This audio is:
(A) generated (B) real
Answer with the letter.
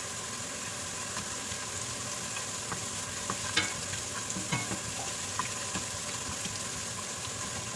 B